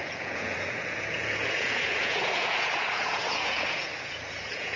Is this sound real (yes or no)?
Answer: no